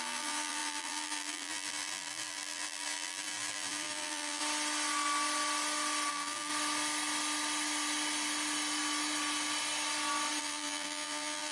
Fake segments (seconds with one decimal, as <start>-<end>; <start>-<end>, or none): 0.0-4.4; 6.1-6.5; 10.4-11.5